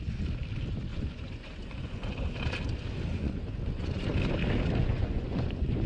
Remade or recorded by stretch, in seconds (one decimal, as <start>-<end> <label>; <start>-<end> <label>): 0.0-0.9 recorded; 0.9-2.1 remade; 2.1-3.1 recorded; 3.1-4.1 remade; 4.1-4.8 recorded; 4.8-5.9 remade